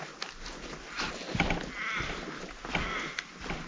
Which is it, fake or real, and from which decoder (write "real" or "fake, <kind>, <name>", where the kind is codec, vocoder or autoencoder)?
real